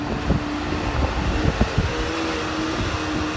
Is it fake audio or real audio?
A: real